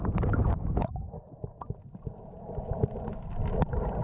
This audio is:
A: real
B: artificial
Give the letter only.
A